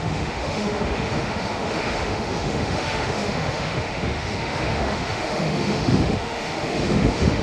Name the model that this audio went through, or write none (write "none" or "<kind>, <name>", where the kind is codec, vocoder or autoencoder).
autoencoder, DAC-VAE